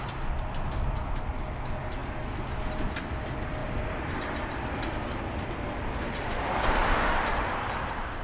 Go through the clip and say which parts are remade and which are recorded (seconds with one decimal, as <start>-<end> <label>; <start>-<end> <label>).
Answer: 0.0-3.6 recorded; 3.6-5.2 remade; 5.2-7.3 recorded; 7.3-8.2 remade